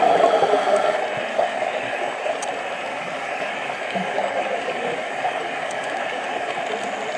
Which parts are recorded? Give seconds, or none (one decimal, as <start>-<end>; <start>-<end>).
0.0-1.3; 2.4-2.9; 6.6-7.2